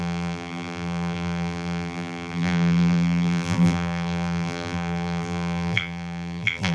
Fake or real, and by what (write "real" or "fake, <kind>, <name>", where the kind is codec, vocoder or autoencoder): fake, vocoder, BigVGAN v2